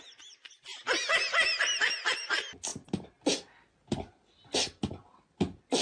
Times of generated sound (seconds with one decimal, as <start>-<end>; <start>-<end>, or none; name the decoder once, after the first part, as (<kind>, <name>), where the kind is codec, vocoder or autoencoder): none